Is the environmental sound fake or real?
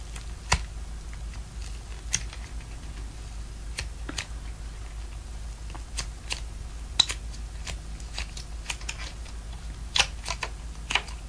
real